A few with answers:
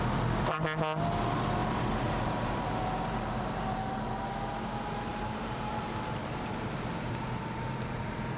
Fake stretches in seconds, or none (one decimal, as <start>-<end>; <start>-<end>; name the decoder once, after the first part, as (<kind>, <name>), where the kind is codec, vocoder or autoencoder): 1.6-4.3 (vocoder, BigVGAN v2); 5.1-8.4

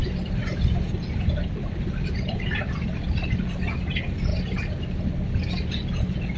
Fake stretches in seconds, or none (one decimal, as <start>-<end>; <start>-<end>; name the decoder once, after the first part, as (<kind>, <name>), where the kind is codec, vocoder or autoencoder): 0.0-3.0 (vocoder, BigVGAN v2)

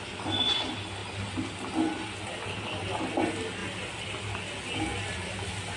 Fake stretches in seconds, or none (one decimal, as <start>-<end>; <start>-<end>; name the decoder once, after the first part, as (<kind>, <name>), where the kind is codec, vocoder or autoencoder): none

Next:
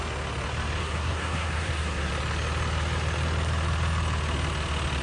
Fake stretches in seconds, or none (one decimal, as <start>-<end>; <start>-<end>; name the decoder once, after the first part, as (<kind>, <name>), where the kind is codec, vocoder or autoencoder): 0.8-2.1 (codec, SNAC)

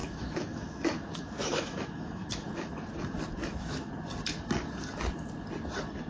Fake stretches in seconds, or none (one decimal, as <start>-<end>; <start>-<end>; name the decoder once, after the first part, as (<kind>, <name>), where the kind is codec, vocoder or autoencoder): 0.0-2.7 (autoencoder, DAC-VAE); 3.4-3.9

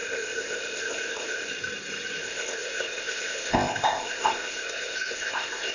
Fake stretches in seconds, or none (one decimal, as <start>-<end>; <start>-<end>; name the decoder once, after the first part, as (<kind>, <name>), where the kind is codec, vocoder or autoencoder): 0.0-1.5 (codec, ZipCodec); 2.2-5.7

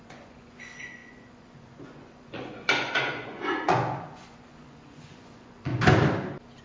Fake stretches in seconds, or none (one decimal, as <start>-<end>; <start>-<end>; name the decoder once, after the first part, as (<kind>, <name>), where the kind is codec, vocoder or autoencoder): 0.0-5.7 (vocoder, Vocos)

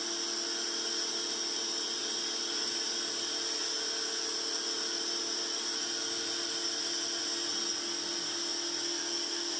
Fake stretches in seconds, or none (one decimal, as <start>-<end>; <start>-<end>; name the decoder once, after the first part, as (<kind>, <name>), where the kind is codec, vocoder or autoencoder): none